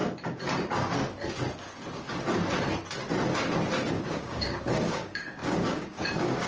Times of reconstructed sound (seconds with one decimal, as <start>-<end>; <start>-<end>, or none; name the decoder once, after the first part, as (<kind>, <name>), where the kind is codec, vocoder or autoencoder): 3.9-6.5 (codec, DAC)